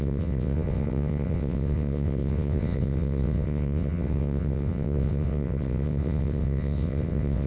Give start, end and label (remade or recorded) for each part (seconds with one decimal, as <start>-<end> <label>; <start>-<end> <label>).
0.0-7.5 remade